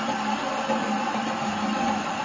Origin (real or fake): real